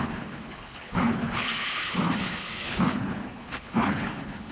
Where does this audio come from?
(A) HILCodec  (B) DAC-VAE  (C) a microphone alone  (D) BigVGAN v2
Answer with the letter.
A